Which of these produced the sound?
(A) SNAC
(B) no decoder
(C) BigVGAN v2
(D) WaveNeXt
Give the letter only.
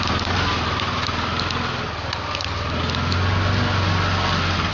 B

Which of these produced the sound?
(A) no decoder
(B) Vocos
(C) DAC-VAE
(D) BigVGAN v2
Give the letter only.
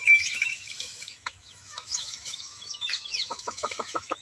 C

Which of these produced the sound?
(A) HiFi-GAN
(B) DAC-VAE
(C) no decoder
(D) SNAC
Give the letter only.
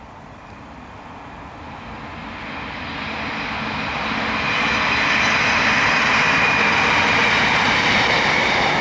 C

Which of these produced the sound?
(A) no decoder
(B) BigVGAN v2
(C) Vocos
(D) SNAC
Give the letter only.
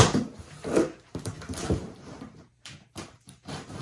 B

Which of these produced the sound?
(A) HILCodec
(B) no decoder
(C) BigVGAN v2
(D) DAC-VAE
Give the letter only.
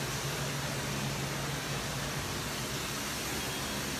B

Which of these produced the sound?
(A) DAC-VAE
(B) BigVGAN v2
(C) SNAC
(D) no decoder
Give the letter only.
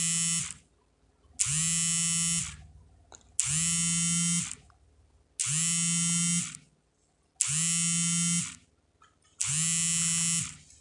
D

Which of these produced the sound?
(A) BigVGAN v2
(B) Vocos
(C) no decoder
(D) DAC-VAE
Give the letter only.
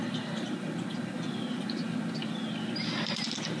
C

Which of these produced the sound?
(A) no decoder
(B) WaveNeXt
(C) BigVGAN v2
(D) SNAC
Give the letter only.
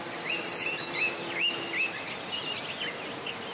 A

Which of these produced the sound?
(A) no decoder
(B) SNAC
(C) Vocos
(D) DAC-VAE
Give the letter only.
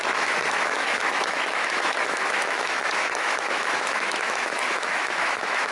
D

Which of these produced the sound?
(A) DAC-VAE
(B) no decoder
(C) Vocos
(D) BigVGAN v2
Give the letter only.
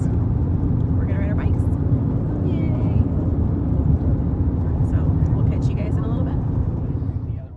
D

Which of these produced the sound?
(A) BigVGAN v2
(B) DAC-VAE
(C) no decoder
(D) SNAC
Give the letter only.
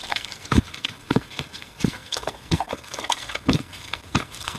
D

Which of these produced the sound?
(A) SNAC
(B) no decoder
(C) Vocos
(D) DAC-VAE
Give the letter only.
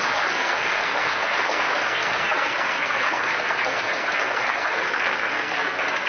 A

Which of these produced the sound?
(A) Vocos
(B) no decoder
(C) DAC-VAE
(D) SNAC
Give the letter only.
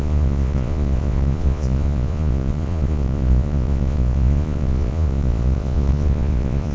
A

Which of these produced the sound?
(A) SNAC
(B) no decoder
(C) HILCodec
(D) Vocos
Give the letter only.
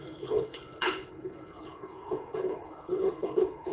C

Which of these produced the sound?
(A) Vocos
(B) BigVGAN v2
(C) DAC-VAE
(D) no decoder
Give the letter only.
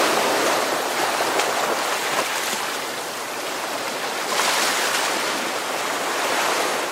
D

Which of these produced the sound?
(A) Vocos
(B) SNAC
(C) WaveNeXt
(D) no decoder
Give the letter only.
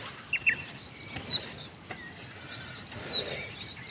D